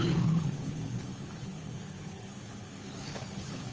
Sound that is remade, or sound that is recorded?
remade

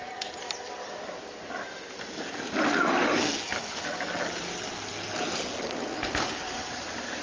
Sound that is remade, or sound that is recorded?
recorded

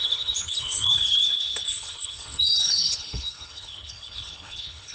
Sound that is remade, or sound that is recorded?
remade